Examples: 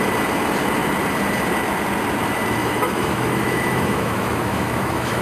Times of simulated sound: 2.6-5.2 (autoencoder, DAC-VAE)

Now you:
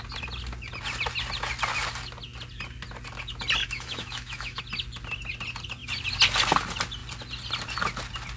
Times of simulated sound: 3.6-4.6 (autoencoder, DAC-VAE)

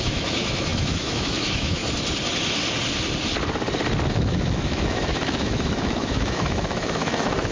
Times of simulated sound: 0.0-1.8 (autoencoder, DAC-VAE); 4.1-7.5